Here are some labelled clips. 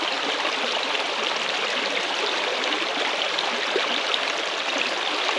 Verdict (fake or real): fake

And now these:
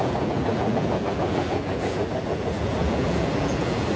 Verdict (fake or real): fake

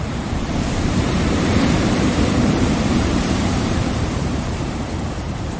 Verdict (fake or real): fake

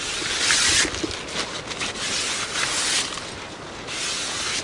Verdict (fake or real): real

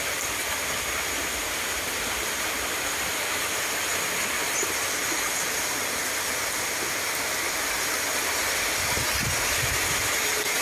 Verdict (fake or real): real